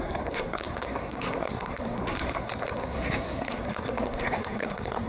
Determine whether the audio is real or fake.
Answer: fake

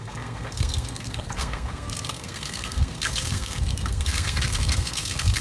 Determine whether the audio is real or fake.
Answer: fake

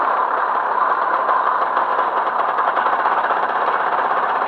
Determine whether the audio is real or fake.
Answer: fake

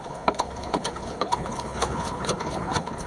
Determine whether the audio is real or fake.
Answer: fake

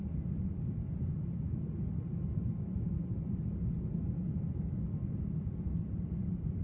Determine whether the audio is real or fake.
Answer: real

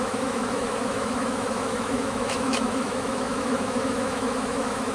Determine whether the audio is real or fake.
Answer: fake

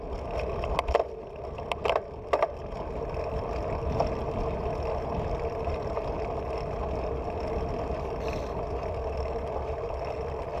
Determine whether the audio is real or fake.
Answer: real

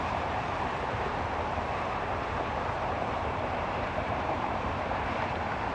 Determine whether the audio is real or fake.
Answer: fake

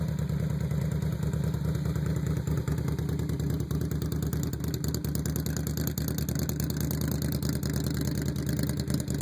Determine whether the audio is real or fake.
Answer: real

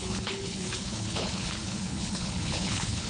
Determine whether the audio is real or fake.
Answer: fake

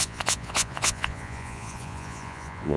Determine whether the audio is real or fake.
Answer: fake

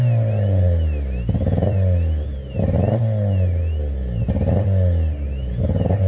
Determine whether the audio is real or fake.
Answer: real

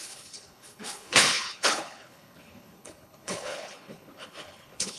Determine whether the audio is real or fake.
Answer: fake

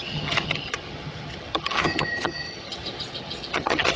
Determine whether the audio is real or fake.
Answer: fake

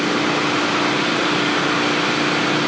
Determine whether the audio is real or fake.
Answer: real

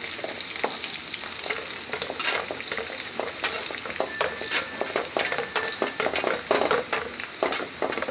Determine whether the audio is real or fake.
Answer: real